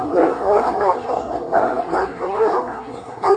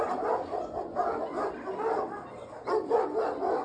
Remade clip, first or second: first